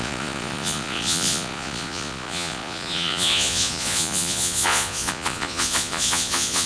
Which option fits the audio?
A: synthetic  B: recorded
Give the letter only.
A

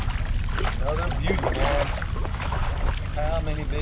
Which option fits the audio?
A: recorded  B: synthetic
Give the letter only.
A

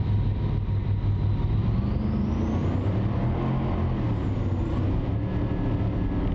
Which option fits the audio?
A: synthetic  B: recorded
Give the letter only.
B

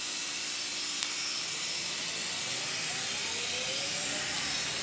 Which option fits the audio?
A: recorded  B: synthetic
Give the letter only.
A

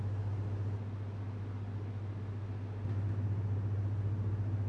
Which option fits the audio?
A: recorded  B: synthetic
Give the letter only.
A